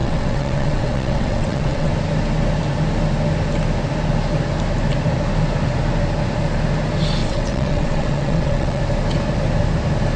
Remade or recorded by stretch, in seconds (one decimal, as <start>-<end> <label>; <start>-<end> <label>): 0.0-1.9 remade; 1.9-7.2 recorded; 7.2-8.8 remade; 8.8-10.2 recorded